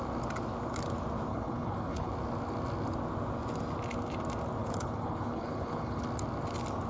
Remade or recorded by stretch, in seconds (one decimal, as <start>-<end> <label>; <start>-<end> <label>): 0.0-1.3 recorded; 1.3-2.1 remade; 2.1-4.6 recorded; 4.6-6.0 remade; 6.0-6.9 recorded